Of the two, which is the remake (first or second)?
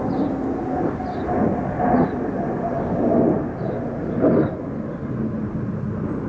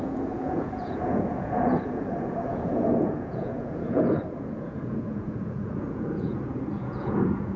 second